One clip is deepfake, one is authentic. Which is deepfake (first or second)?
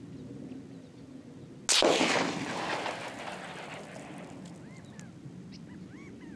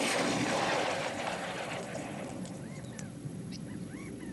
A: second